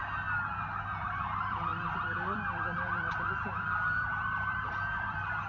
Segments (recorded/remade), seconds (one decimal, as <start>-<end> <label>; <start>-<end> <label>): 0.0-1.0 recorded; 1.0-5.5 remade